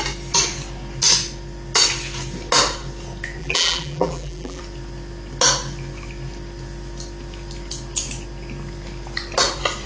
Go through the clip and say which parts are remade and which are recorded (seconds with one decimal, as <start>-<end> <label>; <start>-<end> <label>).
0.0-3.4 recorded; 3.4-4.6 remade; 4.6-9.9 recorded